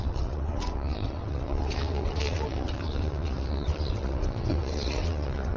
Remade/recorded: remade